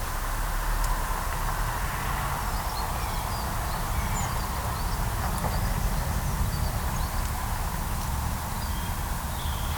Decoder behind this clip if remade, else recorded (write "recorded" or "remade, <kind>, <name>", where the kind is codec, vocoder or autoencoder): recorded